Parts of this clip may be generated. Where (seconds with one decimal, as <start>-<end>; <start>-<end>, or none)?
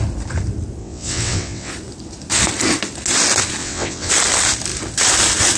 0.8-1.7; 3.6-4.1